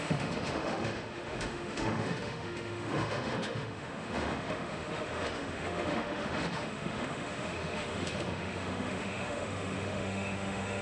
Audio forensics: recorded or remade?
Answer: remade